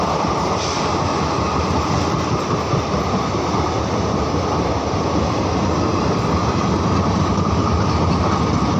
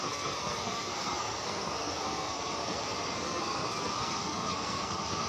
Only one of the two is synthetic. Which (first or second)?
second